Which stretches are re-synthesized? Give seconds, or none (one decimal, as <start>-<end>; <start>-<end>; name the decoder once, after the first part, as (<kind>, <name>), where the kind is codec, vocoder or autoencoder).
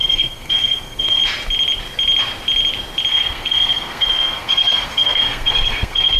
0.0-1.2 (codec, SNAC); 3.1-6.2